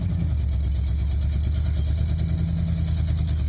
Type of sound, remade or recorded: recorded